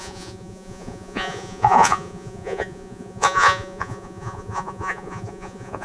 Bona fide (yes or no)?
no